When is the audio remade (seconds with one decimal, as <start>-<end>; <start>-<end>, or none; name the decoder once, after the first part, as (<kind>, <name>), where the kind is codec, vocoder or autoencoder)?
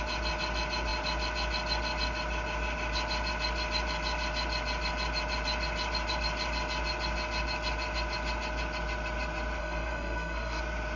9.6-10.6 (codec, SNAC)